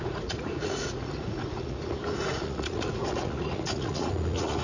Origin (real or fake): fake